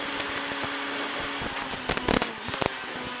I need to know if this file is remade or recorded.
recorded